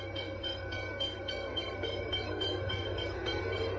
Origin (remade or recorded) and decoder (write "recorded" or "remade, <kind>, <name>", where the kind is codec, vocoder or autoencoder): remade, codec, SNAC